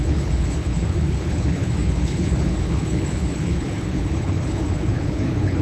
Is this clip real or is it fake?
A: fake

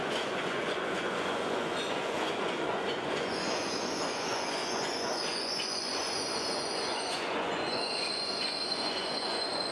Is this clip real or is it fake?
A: fake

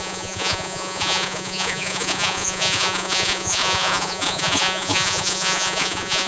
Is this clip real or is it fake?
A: fake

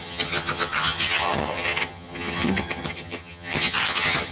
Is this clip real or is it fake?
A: fake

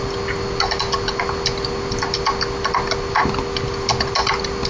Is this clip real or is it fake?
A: real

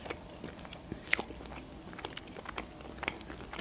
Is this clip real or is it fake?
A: real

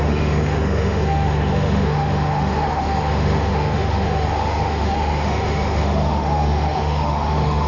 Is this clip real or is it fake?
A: fake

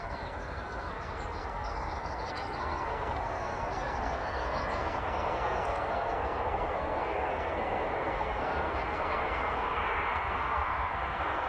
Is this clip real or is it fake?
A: fake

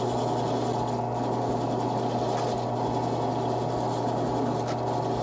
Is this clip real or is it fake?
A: real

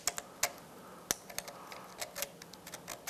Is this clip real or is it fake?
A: real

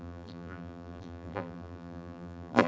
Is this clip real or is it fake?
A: fake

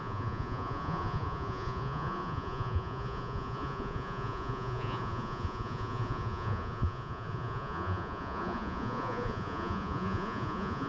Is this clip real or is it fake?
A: fake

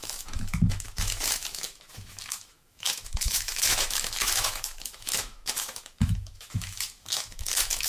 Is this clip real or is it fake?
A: fake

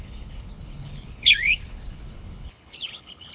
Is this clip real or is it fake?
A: fake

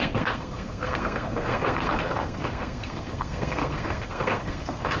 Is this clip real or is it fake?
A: fake